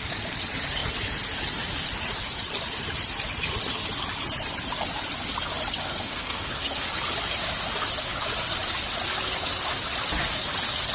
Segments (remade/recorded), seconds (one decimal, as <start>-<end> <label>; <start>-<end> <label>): 0.0-5.8 recorded; 5.8-6.9 remade; 6.9-10.9 recorded